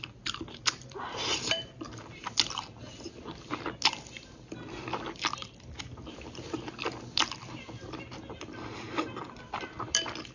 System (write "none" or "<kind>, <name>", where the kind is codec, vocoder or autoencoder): none